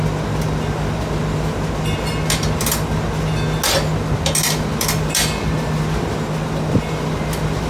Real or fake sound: real